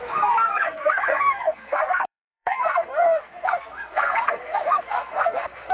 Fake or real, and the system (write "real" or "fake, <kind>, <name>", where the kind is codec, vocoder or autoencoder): fake, codec, SNAC